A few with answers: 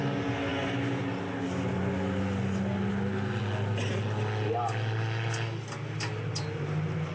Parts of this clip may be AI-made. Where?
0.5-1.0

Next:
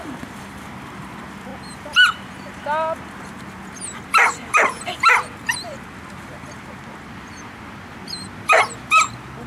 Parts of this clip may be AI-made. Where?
none

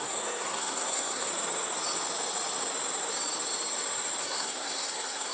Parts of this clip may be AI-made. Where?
0.0-1.3; 4.2-5.3

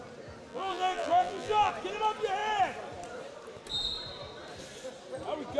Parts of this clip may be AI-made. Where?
0.5-1.7

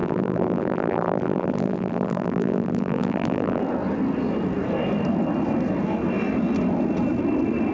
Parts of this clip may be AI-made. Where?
0.0-3.6

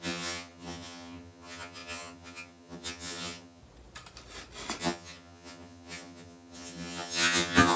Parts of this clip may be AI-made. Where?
0.0-3.6; 4.8-7.8